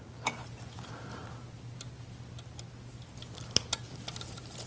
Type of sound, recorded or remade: recorded